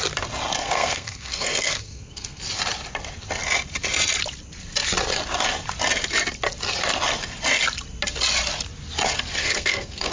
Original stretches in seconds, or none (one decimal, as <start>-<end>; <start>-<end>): 0.0-0.6; 2.4-9.4